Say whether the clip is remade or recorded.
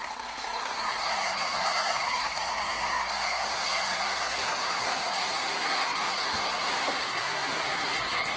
remade